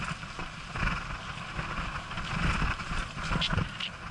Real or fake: real